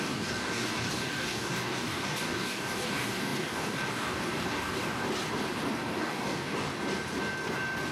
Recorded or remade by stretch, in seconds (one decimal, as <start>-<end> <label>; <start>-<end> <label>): 0.0-5.0 remade; 5.0-6.0 recorded; 6.0-6.7 remade; 6.7-7.9 recorded